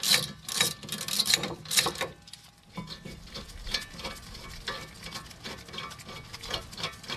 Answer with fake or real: real